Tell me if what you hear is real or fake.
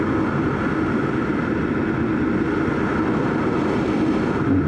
real